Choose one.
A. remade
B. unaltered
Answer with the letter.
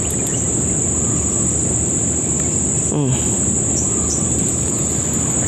B